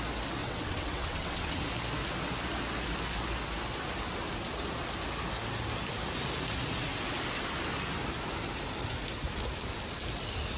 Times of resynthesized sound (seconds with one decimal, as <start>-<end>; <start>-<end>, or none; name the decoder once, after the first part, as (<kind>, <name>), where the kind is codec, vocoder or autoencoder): 0.4-1.6 (vocoder, WaveNeXt)